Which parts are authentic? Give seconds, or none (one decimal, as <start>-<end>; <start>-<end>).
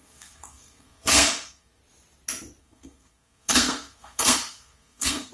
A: 1.8-2.6